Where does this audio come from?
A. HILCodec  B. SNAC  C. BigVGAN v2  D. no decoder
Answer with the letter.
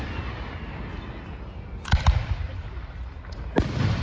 C